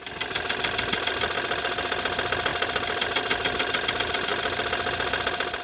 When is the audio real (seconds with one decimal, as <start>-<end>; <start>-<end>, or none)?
0.0-5.6